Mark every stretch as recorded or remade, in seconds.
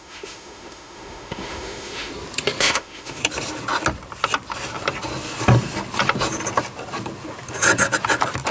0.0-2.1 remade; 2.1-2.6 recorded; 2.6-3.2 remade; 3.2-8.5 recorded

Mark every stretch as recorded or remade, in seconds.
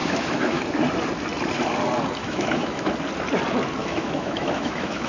0.0-0.6 remade; 0.6-2.2 recorded; 2.2-2.9 remade; 2.9-3.8 recorded; 3.8-5.1 remade